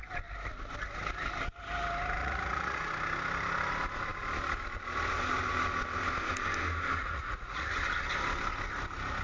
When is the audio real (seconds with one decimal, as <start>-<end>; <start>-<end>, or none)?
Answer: 0.0-2.2; 2.9-7.0; 7.7-9.2